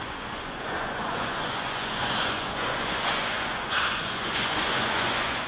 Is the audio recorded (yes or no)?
no